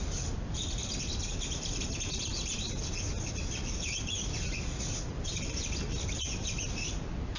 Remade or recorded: recorded